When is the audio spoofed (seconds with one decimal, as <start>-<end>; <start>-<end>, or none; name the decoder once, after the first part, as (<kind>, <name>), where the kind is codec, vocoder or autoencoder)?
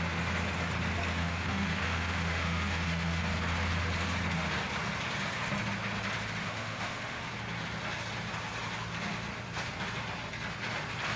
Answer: 1.2-3.2 (autoencoder, DAC-VAE); 6.4-7.3